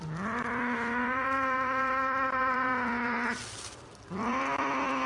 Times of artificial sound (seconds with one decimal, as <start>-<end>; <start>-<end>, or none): 0.0-5.1

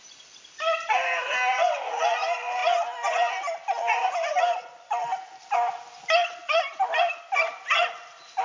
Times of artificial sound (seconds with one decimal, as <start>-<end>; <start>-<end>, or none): none

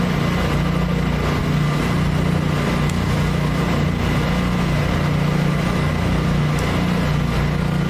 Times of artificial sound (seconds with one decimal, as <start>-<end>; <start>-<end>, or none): none

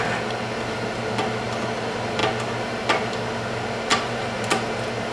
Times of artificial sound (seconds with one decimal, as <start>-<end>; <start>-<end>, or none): 3.9-4.5